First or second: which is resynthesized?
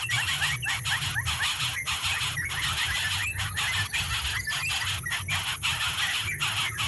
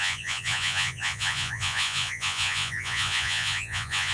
second